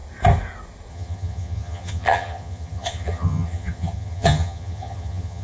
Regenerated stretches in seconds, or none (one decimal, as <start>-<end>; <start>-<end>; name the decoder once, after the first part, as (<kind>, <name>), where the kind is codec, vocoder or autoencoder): 0.9-5.4 (vocoder, HiFi-GAN)